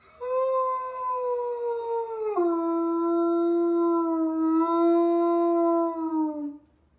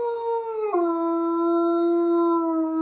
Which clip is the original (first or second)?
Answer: first